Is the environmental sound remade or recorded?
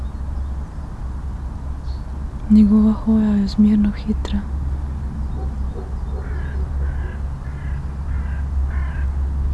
recorded